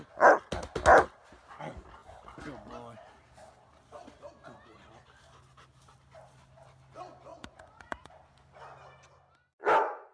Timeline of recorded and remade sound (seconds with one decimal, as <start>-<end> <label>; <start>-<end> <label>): 0.0-7.3 recorded; 7.3-8.1 remade; 8.1-10.1 recorded